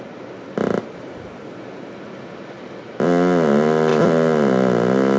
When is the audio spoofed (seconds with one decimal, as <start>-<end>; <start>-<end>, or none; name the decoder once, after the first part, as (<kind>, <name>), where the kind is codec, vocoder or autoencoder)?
none